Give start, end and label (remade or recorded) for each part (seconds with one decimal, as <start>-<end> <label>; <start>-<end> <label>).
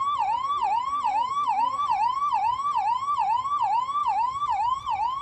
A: 0.0-1.1 recorded; 1.1-1.6 remade; 1.6-4.0 recorded; 4.0-4.8 remade; 4.8-5.2 recorded